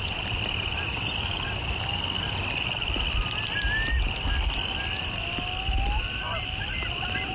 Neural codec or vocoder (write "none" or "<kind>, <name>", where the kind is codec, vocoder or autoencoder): none